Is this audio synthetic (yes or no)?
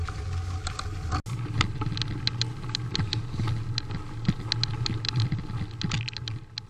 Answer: no